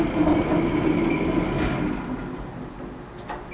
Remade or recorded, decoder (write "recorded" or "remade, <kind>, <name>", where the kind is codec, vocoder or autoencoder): recorded